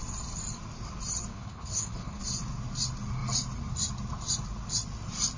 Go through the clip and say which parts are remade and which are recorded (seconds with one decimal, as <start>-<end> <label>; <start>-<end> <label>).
0.0-1.3 recorded; 1.3-2.2 remade; 2.2-5.4 recorded